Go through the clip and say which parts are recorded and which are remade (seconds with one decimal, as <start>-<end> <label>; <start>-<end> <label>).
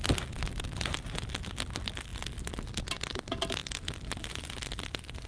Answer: 0.0-5.3 recorded